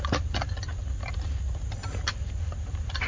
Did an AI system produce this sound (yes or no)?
no